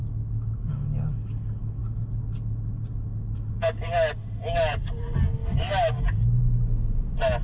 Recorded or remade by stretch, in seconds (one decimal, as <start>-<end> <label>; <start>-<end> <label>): 0.0-0.7 remade; 0.7-5.4 recorded; 5.4-6.0 remade; 6.0-7.4 recorded